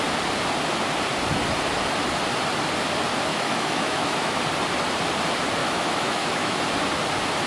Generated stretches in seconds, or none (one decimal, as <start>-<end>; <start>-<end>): 3.3-4.4; 5.6-6.6